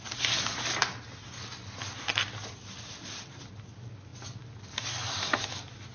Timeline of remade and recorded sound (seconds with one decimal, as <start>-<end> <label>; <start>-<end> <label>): 0.0-5.9 recorded